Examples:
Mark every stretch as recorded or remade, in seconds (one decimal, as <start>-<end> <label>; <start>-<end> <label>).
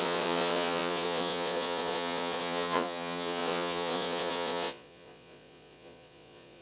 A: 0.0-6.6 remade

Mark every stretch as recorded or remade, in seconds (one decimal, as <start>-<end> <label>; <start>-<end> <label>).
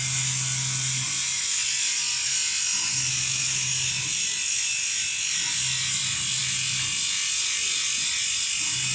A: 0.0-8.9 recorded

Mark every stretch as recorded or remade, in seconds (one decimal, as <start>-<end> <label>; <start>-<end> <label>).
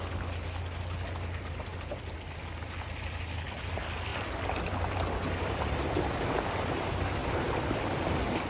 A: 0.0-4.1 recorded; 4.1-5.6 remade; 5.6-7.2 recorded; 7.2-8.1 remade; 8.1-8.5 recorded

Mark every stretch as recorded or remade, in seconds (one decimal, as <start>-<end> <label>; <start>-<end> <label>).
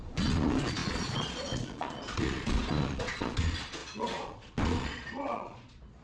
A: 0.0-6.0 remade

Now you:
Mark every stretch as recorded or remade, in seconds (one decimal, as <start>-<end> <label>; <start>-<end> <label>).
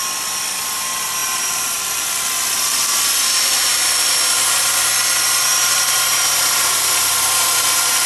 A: 0.0-1.2 recorded; 1.2-3.2 remade; 3.2-5.5 recorded; 5.5-6.2 remade; 6.2-8.1 recorded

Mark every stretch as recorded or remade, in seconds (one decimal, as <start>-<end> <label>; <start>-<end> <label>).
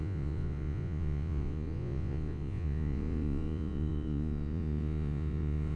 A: 0.0-5.8 remade